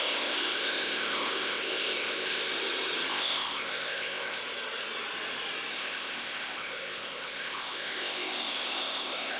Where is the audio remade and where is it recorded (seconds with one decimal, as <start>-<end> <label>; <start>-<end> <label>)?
0.0-2.5 remade; 2.5-3.1 recorded; 3.1-4.4 remade; 4.4-5.7 recorded; 5.7-9.4 remade